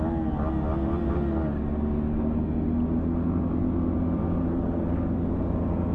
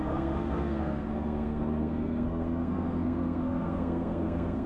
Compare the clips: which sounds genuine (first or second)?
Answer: first